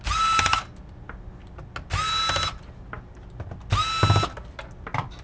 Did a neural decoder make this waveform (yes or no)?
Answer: no